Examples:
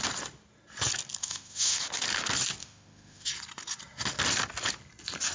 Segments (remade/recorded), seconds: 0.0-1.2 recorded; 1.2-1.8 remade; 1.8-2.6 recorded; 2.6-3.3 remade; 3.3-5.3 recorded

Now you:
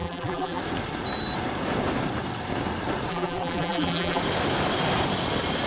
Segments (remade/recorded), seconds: 0.0-0.6 remade; 0.6-3.1 recorded; 3.1-4.2 remade; 4.2-5.7 recorded